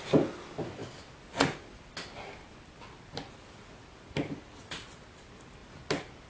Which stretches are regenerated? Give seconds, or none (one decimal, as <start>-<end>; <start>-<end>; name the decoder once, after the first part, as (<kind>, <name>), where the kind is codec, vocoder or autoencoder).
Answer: none